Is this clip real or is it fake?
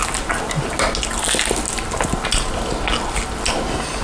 real